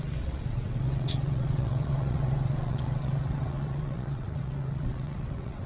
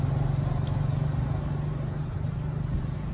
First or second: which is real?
second